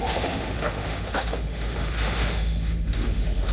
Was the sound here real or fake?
fake